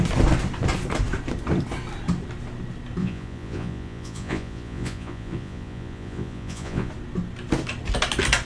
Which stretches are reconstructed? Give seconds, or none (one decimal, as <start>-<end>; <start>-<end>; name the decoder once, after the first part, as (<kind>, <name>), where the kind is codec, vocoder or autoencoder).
3.0-6.9 (vocoder, Vocos)